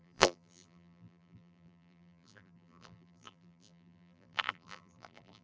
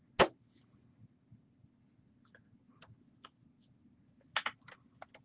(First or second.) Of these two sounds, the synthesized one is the first